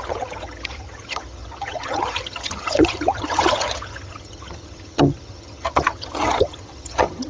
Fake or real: fake